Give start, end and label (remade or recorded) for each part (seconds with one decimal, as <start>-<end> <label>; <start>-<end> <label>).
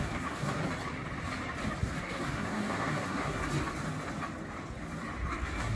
0.0-0.6 remade; 0.6-1.8 recorded; 1.8-3.4 remade; 3.4-5.3 recorded; 5.3-5.8 remade